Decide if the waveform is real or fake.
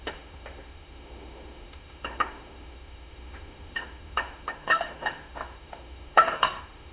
fake